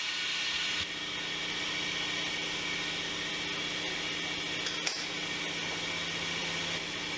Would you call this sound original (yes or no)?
yes